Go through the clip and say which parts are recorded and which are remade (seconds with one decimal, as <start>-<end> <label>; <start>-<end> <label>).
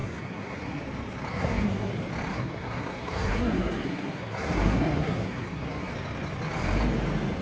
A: 0.0-0.8 remade; 0.8-1.3 recorded; 1.3-1.9 remade; 1.9-2.3 recorded; 2.3-5.9 remade; 5.9-7.4 recorded